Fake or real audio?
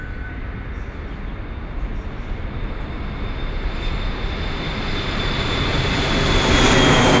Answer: real